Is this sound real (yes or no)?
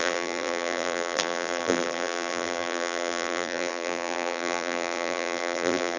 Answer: no